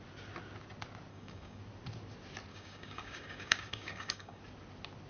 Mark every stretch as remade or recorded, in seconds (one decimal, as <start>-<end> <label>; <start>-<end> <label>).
0.0-1.1 recorded; 1.1-1.6 remade; 1.6-2.5 recorded; 2.5-4.4 remade; 4.4-5.1 recorded